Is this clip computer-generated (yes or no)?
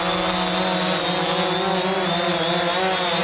no